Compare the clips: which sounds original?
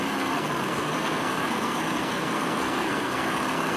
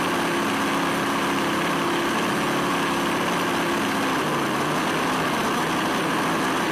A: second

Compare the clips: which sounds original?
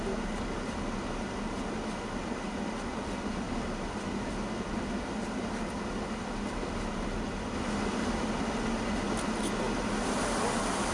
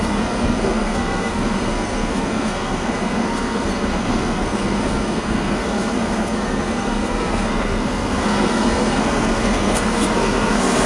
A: first